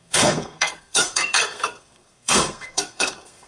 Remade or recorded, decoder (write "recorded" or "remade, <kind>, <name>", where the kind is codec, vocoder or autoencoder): remade, codec, SNAC